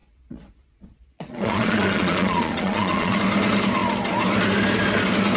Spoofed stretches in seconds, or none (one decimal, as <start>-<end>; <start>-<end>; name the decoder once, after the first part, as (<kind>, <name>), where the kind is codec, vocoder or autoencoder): 0.0-3.2 (vocoder, Vocos)